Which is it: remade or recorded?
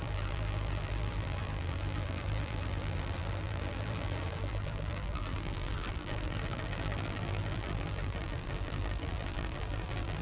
remade